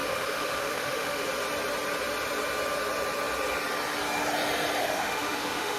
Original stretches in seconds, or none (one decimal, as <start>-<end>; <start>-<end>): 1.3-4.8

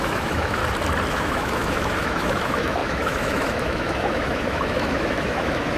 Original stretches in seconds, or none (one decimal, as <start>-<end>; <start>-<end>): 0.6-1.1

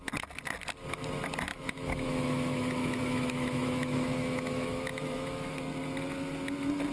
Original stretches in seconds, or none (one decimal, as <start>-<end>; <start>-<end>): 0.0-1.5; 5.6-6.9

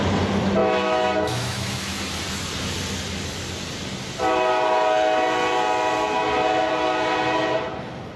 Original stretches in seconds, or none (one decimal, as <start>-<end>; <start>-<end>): 0.0-0.6; 2.0-8.2

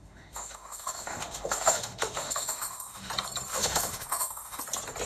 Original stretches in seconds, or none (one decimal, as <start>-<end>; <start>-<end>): 3.1-3.5; 4.6-5.1

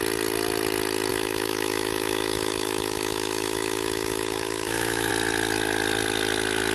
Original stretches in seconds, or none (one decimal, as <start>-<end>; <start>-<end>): 0.0-1.1; 5.1-6.7

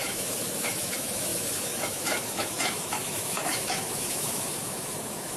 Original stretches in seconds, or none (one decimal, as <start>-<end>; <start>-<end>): none

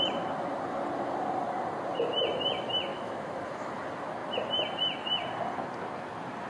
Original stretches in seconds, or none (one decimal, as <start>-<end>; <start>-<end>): 0.0-2.9; 3.7-6.5